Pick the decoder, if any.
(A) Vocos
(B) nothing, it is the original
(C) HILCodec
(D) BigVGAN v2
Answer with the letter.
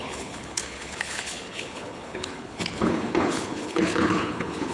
C